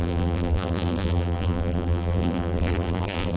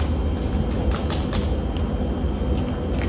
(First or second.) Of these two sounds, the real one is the second